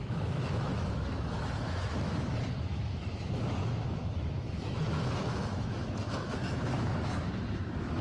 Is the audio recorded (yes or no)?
no